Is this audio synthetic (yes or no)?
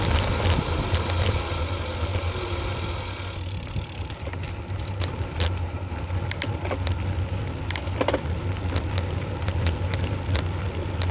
no